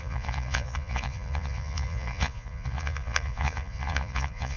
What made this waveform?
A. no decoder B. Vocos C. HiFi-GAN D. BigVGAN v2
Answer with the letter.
B